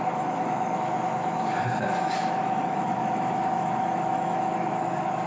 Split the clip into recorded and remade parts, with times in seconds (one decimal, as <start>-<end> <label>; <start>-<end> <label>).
0.0-5.3 remade